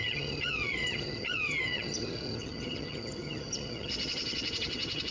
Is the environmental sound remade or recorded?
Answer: remade